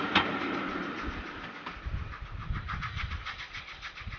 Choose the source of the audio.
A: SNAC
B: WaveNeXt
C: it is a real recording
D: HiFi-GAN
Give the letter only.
C